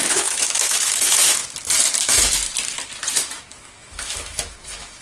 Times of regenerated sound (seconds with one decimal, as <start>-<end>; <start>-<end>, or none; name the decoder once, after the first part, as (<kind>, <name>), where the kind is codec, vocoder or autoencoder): 0.0-1.4 (autoencoder, DAC-VAE); 2.0-2.4; 3.1-5.0